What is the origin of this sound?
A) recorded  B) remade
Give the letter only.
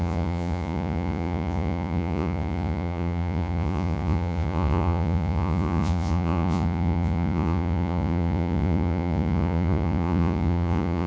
B